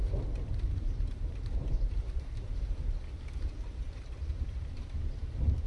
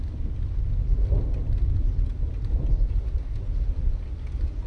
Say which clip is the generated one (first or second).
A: first